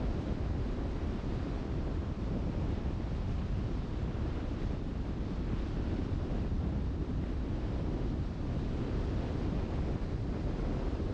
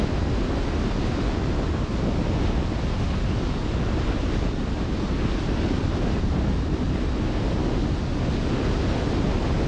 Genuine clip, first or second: second